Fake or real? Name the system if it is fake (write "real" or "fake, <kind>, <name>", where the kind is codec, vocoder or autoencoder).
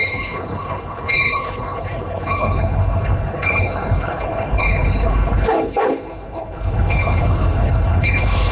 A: fake, codec, HILCodec